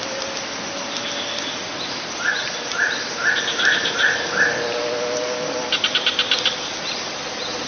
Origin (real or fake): real